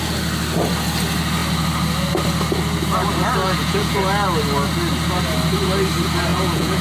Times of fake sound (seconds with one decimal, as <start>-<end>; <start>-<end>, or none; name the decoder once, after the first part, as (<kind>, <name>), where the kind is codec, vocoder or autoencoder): 3.4-4.0 (vocoder, Vocos); 6.3-6.8